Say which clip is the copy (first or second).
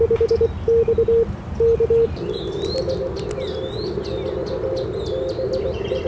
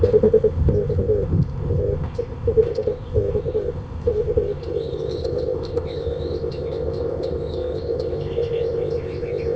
second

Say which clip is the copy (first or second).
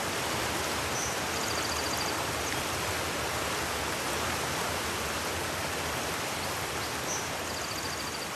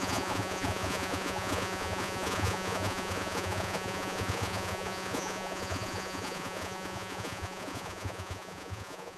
second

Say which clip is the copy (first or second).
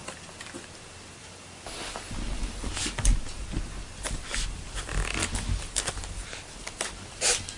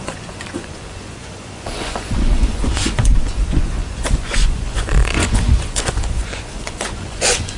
second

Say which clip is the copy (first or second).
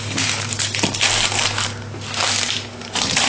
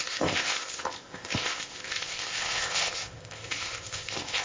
second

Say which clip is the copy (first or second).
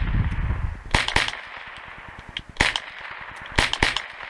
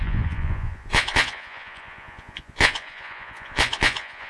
second